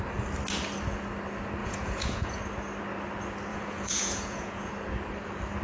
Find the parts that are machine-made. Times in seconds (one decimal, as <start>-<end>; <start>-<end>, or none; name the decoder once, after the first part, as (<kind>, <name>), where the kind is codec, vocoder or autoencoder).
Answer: 1.6-2.4 (vocoder, Vocos); 3.5-4.7